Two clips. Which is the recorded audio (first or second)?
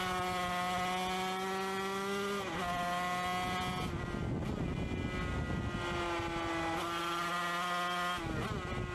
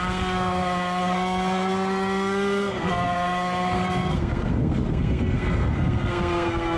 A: first